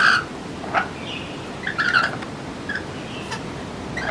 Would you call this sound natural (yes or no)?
yes